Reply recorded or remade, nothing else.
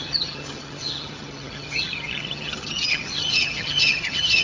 remade